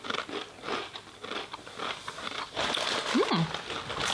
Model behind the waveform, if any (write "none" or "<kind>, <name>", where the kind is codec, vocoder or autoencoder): none